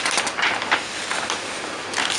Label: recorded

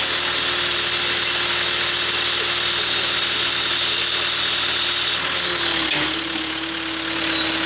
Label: recorded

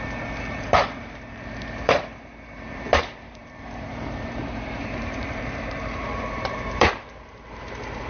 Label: remade